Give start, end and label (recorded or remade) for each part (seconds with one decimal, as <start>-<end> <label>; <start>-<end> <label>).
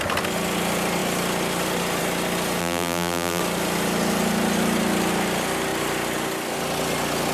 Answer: 0.0-2.6 recorded; 2.6-3.4 remade; 3.4-7.3 recorded